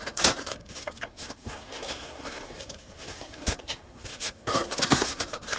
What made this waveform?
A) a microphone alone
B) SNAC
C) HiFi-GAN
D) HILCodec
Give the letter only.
B